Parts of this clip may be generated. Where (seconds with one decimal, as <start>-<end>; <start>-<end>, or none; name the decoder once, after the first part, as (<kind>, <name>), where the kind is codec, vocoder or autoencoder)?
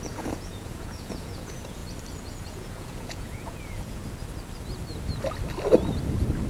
0.0-1.8 (vocoder, Vocos); 2.5-4.0